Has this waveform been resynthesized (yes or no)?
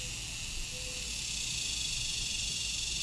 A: no